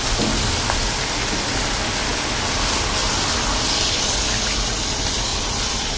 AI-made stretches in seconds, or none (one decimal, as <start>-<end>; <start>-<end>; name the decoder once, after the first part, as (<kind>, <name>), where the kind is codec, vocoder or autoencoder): none